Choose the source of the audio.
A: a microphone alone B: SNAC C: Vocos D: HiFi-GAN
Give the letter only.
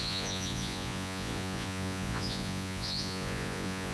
C